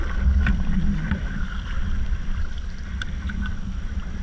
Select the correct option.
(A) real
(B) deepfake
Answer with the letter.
A